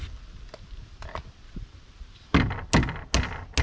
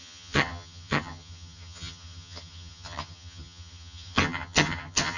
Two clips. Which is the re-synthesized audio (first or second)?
second